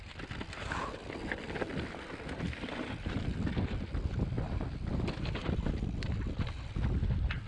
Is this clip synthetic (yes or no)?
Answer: no